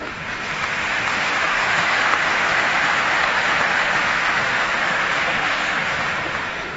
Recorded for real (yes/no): no